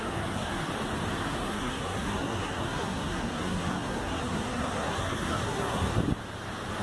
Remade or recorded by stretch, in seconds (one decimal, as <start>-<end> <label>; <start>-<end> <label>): 0.0-0.7 remade; 0.7-1.2 recorded; 1.2-6.0 remade; 6.0-6.8 recorded